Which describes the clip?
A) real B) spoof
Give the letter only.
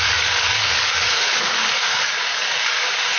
B